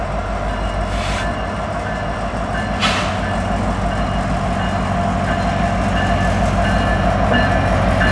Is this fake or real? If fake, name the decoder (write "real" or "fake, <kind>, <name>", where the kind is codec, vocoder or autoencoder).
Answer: real